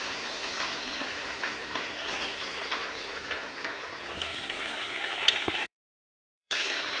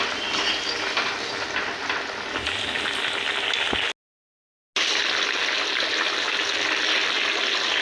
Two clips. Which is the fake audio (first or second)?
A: first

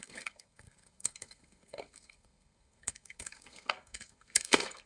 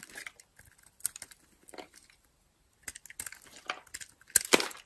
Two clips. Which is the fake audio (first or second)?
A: first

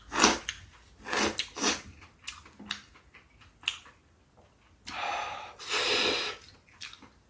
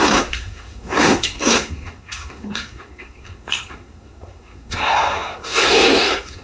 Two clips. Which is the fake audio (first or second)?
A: second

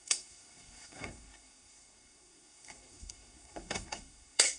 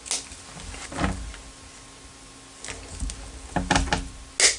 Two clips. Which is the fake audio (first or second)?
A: first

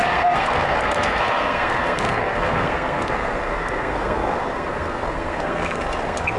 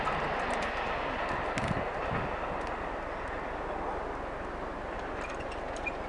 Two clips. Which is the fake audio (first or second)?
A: first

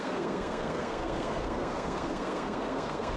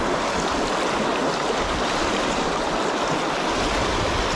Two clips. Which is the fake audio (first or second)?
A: first